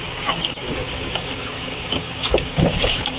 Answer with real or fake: fake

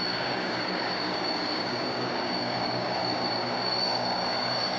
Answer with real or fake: fake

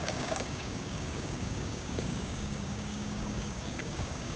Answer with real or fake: fake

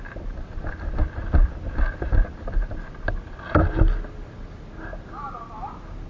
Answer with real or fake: real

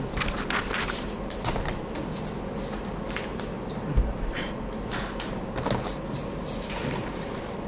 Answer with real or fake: real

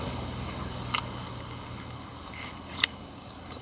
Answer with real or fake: fake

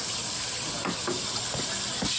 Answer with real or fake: real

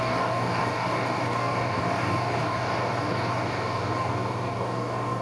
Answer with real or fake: fake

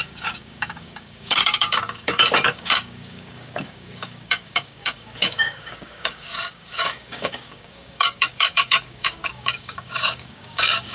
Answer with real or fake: fake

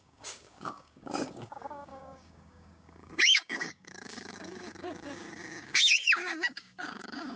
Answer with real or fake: fake